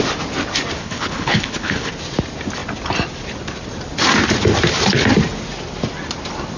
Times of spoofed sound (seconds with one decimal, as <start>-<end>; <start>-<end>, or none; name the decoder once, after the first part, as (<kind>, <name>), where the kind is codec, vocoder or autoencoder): 0.8-1.9 (codec, HILCodec)